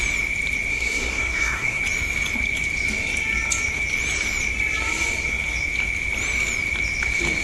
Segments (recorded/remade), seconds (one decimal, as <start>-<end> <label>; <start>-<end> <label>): 0.0-0.7 recorded; 0.7-1.8 remade; 1.8-7.4 recorded